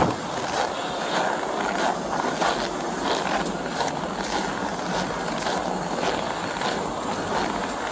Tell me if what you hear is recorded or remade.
recorded